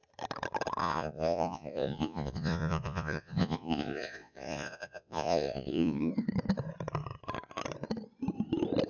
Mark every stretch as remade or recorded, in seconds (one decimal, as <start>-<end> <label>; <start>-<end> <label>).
0.0-0.8 recorded; 0.8-6.1 remade; 6.1-8.9 recorded